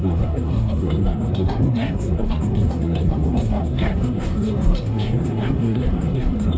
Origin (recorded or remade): remade